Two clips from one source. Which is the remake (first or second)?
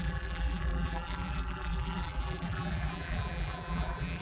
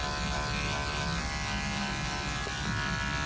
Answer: first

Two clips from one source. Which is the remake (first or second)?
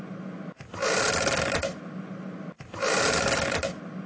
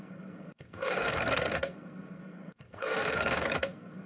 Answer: second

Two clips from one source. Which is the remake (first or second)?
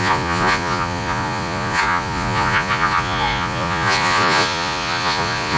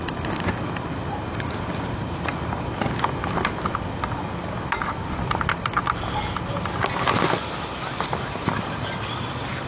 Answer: first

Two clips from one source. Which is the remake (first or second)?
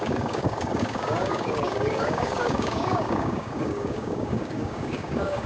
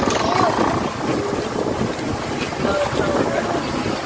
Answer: first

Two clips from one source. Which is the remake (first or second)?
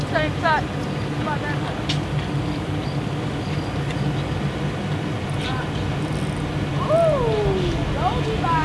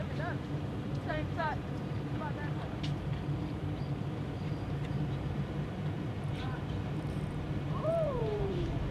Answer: second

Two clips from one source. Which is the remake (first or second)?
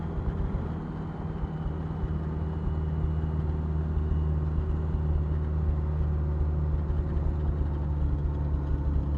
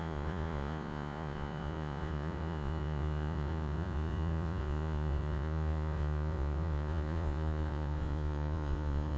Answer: second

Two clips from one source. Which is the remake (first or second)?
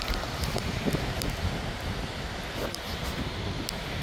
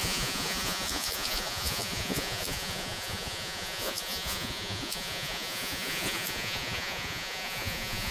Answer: second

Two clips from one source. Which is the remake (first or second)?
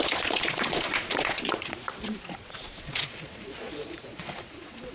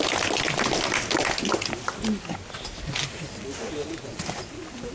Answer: first